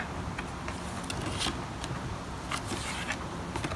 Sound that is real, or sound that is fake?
real